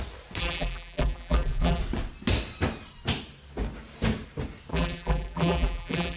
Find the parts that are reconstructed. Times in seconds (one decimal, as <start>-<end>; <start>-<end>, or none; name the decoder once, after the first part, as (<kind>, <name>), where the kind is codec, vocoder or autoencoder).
0.4-1.8 (vocoder, BigVGAN v2); 4.7-6.2